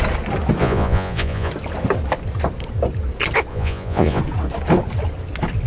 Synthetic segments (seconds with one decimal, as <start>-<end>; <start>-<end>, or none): 0.6-1.5; 3.5-4.2